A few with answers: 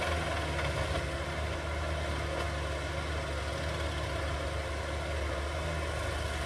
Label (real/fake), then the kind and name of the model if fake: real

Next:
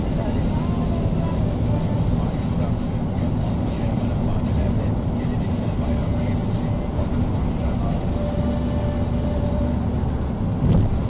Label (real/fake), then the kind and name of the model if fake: real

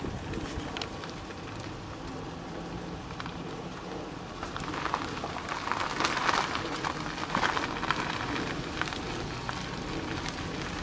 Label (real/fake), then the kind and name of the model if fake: real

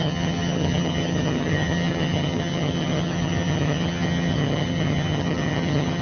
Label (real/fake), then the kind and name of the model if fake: fake, vocoder, HiFi-GAN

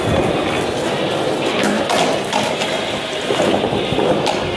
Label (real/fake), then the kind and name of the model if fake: real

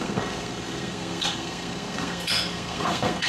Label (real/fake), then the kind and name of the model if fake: fake, codec, SNAC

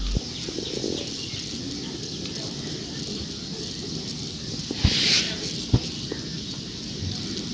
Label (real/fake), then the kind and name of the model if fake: real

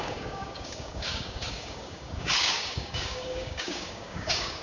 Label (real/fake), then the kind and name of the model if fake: fake, codec, DAC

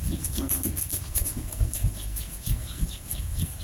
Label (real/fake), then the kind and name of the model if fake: fake, codec, SNAC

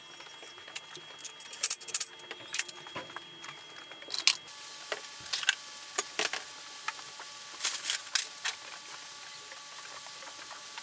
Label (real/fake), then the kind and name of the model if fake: real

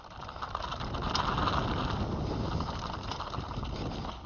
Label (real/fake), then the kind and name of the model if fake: real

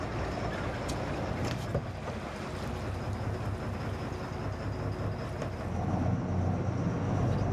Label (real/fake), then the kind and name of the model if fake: real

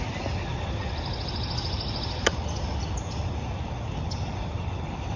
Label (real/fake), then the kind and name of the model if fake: real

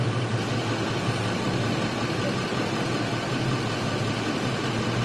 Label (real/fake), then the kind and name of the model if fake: real